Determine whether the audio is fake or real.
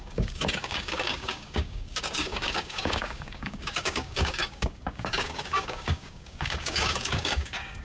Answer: fake